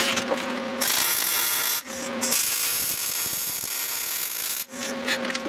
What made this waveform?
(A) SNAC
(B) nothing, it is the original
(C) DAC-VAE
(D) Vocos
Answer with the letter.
B